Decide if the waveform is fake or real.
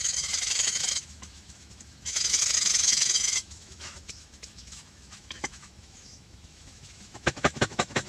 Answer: fake